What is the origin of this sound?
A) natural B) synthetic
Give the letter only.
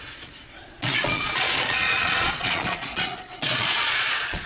B